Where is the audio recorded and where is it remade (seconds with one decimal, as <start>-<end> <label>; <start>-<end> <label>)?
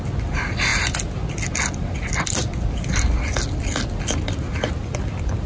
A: 0.0-5.5 recorded